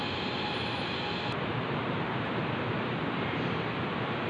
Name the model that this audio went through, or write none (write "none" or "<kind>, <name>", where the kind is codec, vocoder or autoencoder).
none